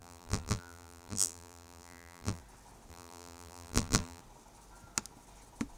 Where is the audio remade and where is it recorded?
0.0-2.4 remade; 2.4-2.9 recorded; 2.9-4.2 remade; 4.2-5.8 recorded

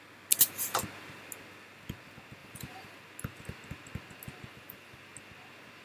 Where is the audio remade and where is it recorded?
0.0-2.4 recorded; 2.4-3.0 remade; 3.0-4.5 recorded; 4.5-5.0 remade; 5.0-5.8 recorded

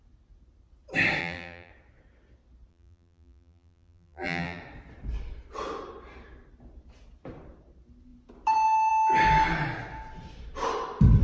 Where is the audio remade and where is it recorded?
0.0-1.2 recorded; 1.2-1.7 remade; 1.7-2.7 recorded; 2.7-4.6 remade; 4.6-11.2 recorded

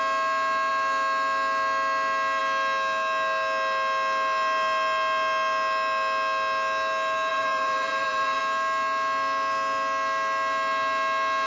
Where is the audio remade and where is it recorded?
0.0-7.3 recorded; 7.3-8.4 remade; 8.4-11.5 recorded

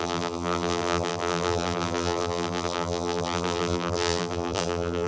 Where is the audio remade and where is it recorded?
0.0-5.1 remade